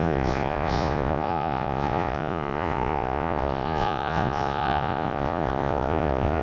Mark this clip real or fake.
fake